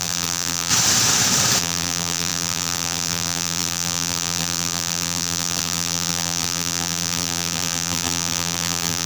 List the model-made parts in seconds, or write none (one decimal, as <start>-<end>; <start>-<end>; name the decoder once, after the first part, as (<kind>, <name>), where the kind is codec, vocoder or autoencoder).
0.0-0.7 (vocoder, BigVGAN v2); 1.6-9.1